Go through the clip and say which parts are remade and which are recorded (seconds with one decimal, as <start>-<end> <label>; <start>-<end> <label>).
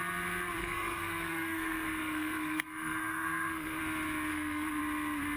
0.0-0.6 recorded; 0.6-3.8 remade; 3.8-4.3 recorded; 4.3-4.8 remade; 4.8-5.4 recorded